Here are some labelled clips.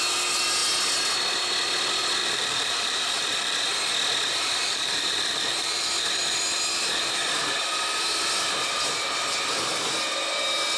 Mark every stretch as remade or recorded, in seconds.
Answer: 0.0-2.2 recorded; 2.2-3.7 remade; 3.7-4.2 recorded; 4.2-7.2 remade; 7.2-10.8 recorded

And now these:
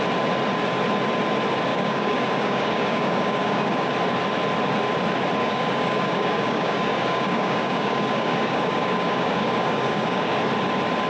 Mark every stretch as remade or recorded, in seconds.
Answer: 0.0-1.7 recorded; 1.7-3.9 remade; 3.9-5.4 recorded; 5.4-10.4 remade; 10.4-11.1 recorded

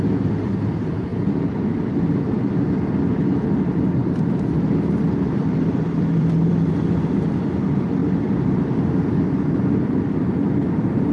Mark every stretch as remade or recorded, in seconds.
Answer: 0.0-1.1 remade; 1.1-3.9 recorded; 3.9-11.1 remade

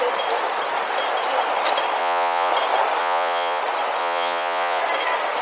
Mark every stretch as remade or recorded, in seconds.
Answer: 0.0-2.0 recorded; 2.0-2.5 remade; 2.5-3.0 recorded; 3.0-3.6 remade; 3.6-4.0 recorded; 4.0-4.8 remade; 4.8-5.4 recorded

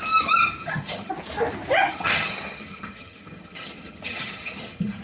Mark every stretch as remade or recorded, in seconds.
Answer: 0.0-0.6 recorded; 0.6-1.1 remade; 1.1-1.9 recorded; 1.9-5.0 remade

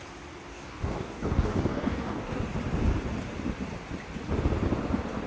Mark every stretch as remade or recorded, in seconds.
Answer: 0.0-0.5 recorded; 0.5-2.4 remade; 2.4-5.3 recorded